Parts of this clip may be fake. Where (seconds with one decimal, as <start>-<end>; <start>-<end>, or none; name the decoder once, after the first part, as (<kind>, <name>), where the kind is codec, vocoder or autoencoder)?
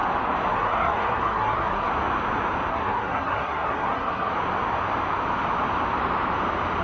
0.5-1.9 (codec, SNAC); 2.7-4.3